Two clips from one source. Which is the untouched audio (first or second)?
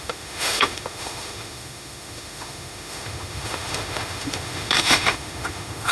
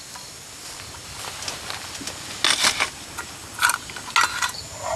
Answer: second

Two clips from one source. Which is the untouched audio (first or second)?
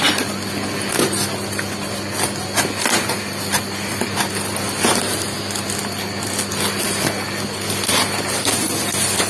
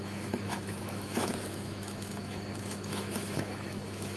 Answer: first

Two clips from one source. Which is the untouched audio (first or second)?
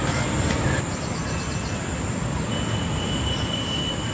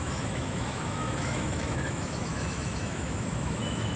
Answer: first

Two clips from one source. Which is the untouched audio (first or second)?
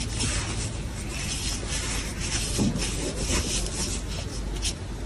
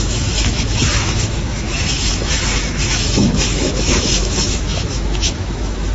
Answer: first